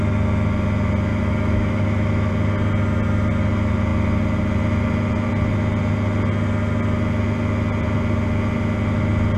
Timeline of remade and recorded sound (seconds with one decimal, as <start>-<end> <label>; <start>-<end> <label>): 0.0-1.1 recorded; 1.1-2.3 remade; 2.3-9.4 recorded